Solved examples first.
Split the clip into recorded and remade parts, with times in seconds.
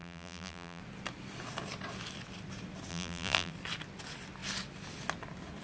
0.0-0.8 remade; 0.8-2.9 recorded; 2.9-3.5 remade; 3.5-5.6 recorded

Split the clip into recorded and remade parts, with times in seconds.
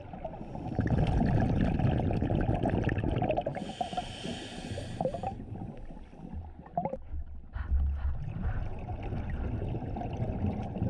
0.0-3.5 recorded; 3.5-6.4 remade; 6.4-10.9 recorded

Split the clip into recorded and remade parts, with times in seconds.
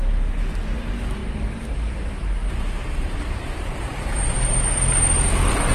0.0-1.2 recorded; 1.2-4.6 remade; 4.6-5.7 recorded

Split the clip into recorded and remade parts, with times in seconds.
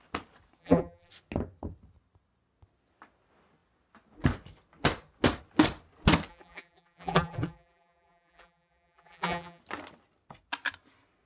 0.0-0.6 recorded; 0.6-1.1 remade; 1.1-6.3 recorded; 6.3-9.6 remade; 9.6-11.3 recorded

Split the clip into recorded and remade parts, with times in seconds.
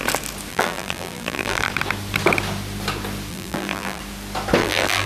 0.0-0.5 recorded; 0.5-1.7 remade; 1.7-3.3 recorded; 3.3-4.0 remade; 4.0-4.6 recorded; 4.6-5.1 remade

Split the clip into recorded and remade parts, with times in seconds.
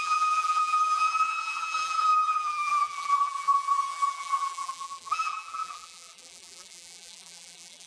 0.0-7.9 remade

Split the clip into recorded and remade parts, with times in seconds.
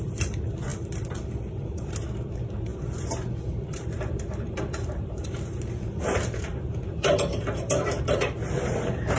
0.0-9.2 remade